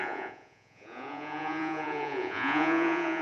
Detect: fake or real fake